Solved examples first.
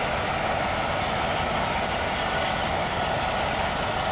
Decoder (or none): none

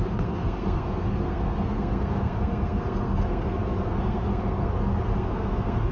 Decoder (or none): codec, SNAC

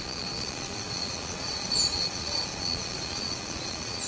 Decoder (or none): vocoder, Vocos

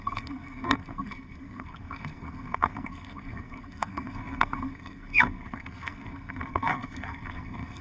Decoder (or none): codec, SNAC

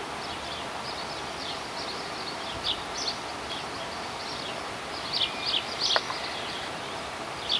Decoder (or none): none